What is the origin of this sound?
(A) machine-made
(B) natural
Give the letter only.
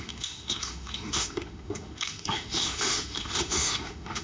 A